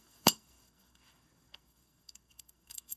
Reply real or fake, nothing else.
fake